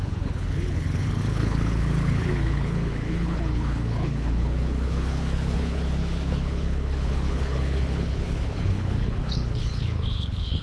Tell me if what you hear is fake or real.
fake